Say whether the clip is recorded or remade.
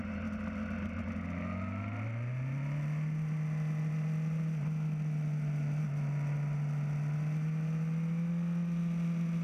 recorded